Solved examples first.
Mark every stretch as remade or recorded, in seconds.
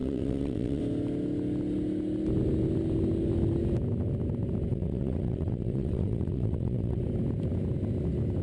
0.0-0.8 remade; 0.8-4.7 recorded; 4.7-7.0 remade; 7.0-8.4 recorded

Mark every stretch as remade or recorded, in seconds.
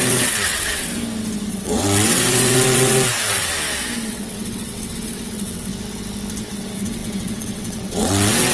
0.0-0.9 remade; 0.9-1.5 recorded; 1.5-3.5 remade; 3.5-4.1 recorded; 4.1-5.7 remade; 5.7-6.5 recorded; 6.5-8.5 remade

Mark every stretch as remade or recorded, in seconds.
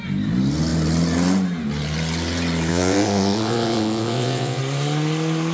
0.0-2.7 recorded; 2.7-4.6 remade; 4.6-5.5 recorded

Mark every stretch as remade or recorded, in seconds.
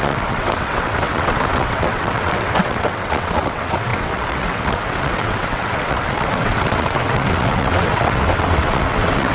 0.0-9.3 remade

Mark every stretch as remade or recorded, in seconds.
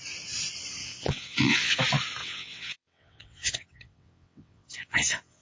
0.0-0.8 recorded; 0.8-1.8 remade; 1.8-2.2 recorded; 2.2-5.4 remade